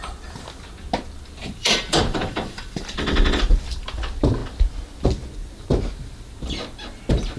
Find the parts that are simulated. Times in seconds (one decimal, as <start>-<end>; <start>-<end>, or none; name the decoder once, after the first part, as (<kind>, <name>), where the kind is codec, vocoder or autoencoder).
1.4-4.0 (vocoder, BigVGAN v2)